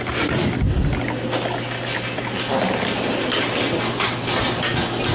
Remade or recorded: recorded